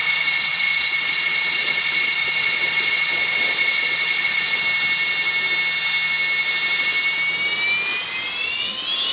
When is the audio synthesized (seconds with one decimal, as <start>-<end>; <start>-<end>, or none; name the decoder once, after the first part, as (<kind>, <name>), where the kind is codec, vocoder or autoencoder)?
0.0-4.6 (vocoder, WaveNeXt)